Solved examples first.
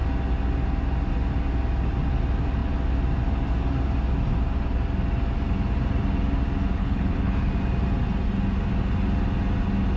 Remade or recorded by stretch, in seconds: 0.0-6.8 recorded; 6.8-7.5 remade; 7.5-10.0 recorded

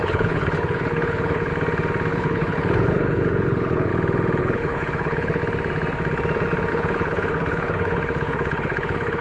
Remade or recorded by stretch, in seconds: 0.0-1.5 remade; 1.5-2.1 recorded; 2.1-3.9 remade; 3.9-4.4 recorded; 4.4-5.4 remade; 5.4-6.7 recorded; 6.7-9.2 remade

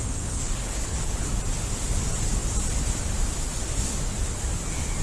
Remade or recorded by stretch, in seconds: 0.0-1.3 remade; 1.3-5.0 recorded